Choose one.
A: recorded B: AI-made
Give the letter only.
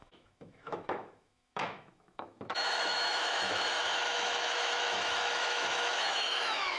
B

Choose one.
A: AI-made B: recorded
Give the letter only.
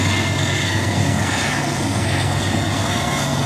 A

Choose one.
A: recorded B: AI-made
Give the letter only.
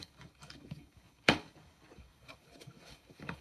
B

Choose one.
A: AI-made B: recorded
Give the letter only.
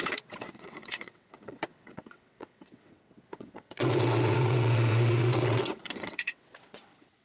A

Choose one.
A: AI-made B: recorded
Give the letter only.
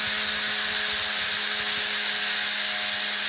B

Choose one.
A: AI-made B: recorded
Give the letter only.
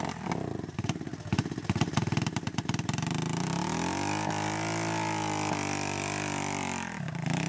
B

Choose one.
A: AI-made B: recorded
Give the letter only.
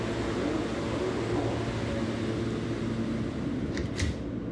B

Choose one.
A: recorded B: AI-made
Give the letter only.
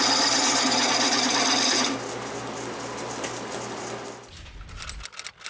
A